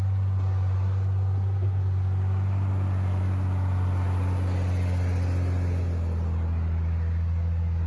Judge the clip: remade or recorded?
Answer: recorded